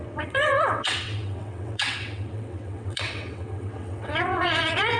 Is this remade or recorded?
remade